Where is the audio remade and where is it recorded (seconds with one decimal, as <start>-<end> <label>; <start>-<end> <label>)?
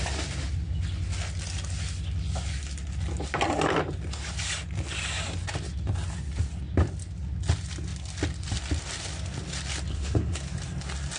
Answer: 0.0-9.9 recorded; 9.9-10.4 remade; 10.4-11.2 recorded